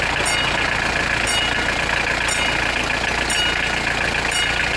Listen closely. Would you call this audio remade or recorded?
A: recorded